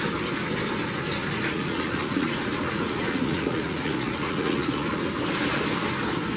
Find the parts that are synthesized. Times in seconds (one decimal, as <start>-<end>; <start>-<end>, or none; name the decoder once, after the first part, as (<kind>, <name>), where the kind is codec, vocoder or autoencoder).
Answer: 1.2-5.0 (vocoder, Vocos)